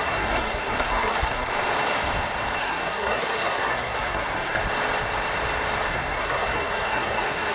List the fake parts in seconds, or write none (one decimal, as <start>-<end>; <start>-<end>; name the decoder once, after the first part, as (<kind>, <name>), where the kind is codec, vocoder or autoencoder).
0.0-1.5 (codec, SNAC); 2.6-4.6; 5.9-7.5